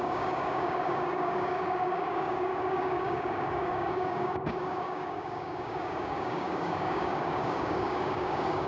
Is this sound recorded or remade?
remade